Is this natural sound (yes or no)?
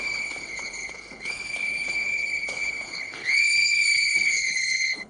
no